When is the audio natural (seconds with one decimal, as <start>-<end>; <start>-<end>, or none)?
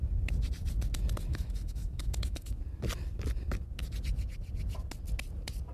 0.0-1.3; 2.6-5.7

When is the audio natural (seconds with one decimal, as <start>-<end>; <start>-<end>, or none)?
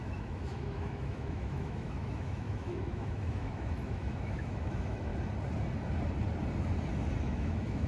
5.1-7.2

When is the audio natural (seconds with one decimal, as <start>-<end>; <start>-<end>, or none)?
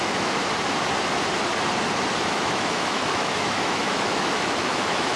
0.4-2.2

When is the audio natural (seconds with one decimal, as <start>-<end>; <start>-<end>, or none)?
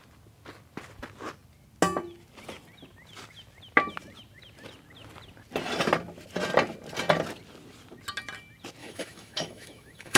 0.0-8.8